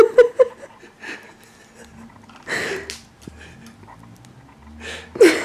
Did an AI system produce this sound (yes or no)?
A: no